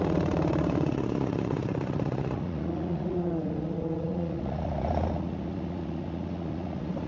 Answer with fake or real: fake